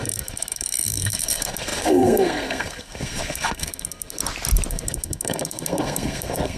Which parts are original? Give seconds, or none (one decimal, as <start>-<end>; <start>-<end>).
4.2-4.7